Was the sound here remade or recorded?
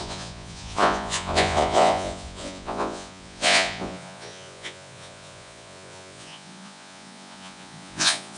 remade